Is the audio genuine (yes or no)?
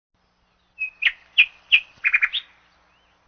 yes